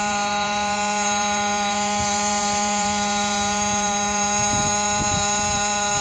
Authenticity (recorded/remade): remade